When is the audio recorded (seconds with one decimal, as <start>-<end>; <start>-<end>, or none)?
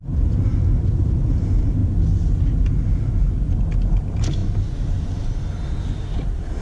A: 0.0-0.5; 1.2-6.6